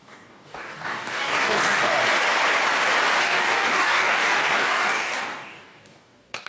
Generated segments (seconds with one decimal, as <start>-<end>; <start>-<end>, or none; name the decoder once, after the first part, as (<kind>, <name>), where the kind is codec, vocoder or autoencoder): 0.0-1.9 (codec, DAC); 3.2-6.5